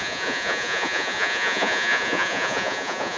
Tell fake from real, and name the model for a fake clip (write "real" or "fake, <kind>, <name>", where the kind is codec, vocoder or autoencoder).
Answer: fake, vocoder, Vocos